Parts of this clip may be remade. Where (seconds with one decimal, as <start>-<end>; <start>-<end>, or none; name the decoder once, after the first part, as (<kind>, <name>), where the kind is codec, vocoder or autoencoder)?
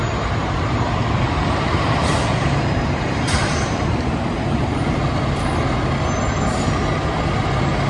0.4-5.0 (vocoder, BigVGAN v2)